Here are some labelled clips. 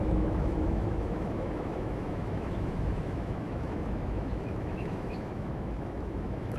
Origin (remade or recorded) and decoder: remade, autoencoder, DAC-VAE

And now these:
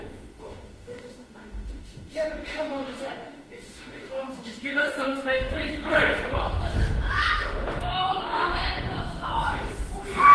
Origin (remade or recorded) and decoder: remade, autoencoder, DAC-VAE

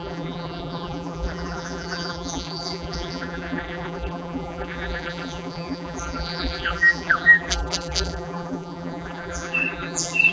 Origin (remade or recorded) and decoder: remade, vocoder, BigVGAN v2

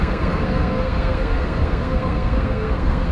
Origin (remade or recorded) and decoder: remade, codec, SNAC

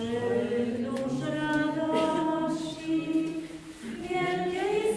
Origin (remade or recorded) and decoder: recorded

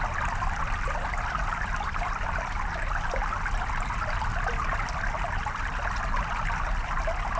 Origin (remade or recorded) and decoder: recorded